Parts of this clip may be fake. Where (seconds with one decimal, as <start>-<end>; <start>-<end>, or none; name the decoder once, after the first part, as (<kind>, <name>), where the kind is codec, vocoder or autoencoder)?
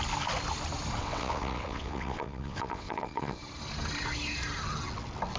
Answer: 1.0-3.4 (vocoder, WaveNeXt)